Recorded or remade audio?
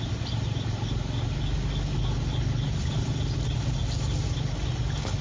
recorded